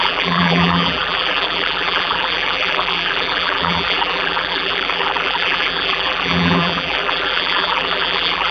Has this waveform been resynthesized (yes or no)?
yes